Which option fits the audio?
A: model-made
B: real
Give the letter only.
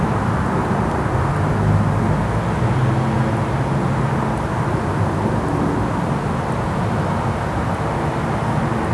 B